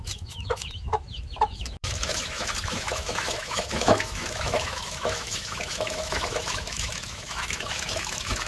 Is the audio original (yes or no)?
no